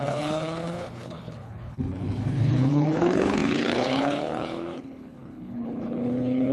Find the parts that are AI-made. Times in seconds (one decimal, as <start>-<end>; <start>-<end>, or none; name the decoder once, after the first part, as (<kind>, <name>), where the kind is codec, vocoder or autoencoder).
0.0-6.5 (codec, HILCodec)